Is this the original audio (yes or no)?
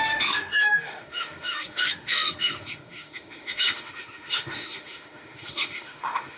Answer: no